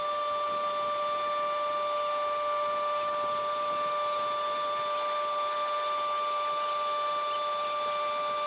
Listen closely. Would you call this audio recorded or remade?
recorded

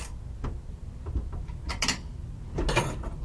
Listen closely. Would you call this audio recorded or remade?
recorded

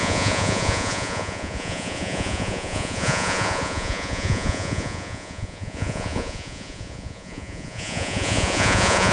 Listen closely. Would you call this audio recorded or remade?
remade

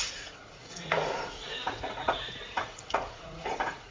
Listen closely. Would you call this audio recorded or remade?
remade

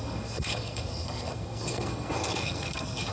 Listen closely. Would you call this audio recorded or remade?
remade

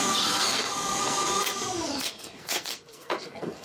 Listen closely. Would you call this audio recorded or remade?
remade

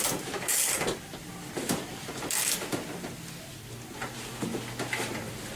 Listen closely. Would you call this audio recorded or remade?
recorded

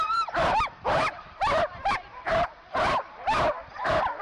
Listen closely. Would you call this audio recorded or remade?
remade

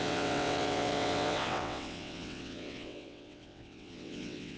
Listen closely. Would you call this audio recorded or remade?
remade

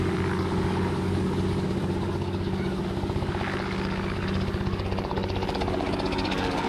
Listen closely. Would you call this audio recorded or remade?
remade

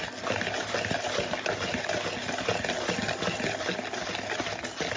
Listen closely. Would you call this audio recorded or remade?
recorded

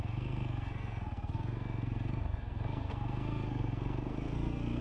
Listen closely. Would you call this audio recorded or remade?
remade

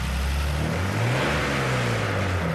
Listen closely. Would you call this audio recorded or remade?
recorded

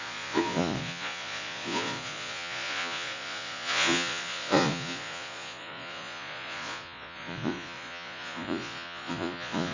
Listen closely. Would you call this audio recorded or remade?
remade